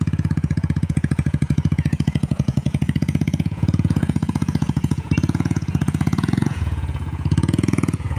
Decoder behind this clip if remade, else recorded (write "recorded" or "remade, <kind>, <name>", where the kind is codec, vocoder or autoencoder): remade, vocoder, Vocos